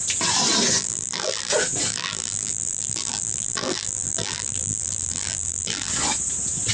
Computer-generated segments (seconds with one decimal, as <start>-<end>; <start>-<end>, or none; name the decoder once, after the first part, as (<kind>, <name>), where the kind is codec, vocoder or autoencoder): 0.8-1.5 (vocoder, BigVGAN v2); 1.9-5.9